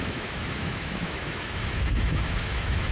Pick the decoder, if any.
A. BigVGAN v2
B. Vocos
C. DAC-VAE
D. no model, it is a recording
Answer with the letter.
C